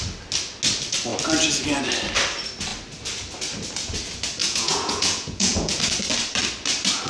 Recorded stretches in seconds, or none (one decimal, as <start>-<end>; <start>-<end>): 0.0-4.4; 5.8-7.1